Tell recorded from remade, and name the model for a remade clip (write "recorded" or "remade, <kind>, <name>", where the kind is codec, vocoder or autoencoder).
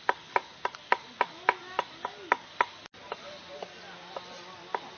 recorded